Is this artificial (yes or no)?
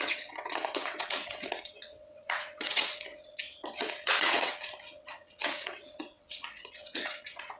yes